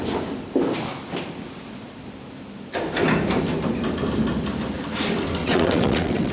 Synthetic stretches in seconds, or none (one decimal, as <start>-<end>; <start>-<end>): 5.4-6.3